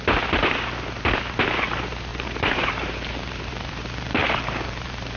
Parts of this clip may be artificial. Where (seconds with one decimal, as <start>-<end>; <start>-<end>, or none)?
2.1-5.2

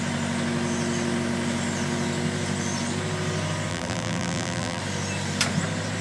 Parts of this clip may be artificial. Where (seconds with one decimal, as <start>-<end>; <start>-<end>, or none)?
3.7-4.8

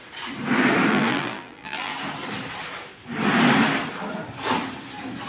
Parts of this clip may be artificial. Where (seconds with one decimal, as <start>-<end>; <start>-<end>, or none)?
0.9-1.9

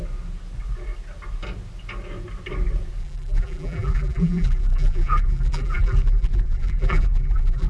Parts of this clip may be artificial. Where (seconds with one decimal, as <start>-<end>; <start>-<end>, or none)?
3.0-7.7